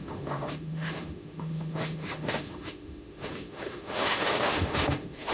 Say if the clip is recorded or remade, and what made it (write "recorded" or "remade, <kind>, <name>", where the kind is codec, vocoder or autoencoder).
remade, autoencoder, DAC-VAE